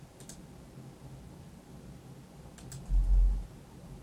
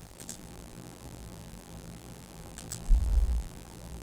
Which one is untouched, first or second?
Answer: first